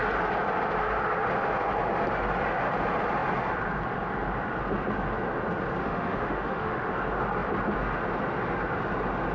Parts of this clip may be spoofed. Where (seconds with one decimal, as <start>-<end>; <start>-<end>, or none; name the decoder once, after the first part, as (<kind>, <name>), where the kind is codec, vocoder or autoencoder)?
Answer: 5.8-6.9 (autoencoder, DAC-VAE)